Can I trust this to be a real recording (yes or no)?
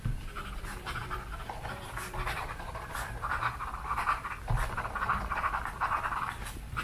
no